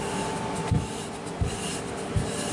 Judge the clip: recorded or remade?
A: recorded